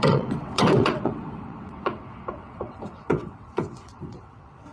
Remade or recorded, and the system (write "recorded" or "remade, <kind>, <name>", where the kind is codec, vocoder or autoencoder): remade, vocoder, WaveNeXt